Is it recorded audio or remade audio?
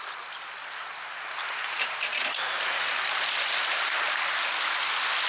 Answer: recorded